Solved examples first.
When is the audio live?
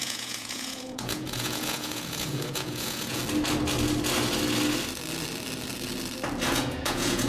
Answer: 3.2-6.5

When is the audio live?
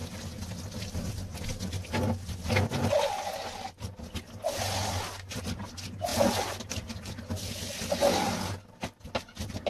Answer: 0.0-9.7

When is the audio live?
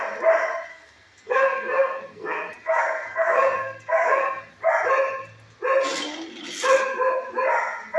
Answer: 0.0-0.7; 4.4-8.0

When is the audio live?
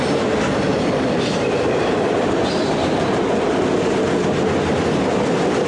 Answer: 0.0-0.7; 3.5-5.7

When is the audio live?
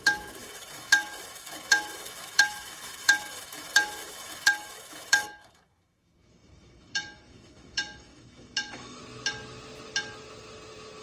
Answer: 9.0-11.0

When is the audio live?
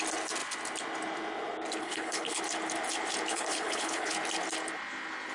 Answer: 0.0-1.8; 2.4-3.3; 4.1-5.3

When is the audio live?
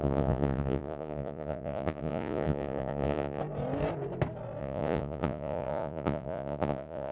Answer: 3.4-4.6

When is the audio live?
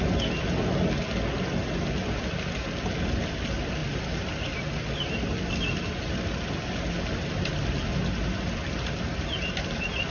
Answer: 0.0-10.1